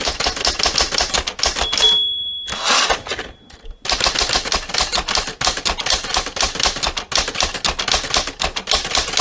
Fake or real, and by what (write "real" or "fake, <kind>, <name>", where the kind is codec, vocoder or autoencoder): real